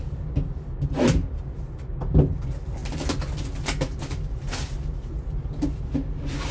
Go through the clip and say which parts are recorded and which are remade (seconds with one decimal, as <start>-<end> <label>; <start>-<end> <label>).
0.0-6.5 recorded